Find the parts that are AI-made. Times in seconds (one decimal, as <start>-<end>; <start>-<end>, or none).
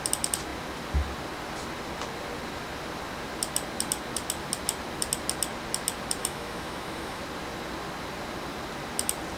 6.2-7.2